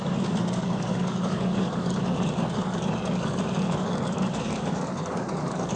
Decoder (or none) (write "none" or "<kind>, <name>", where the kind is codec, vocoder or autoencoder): codec, DAC